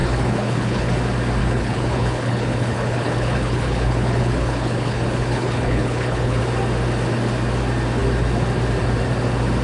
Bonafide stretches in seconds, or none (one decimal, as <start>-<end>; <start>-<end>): 0.9-1.4; 6.4-9.6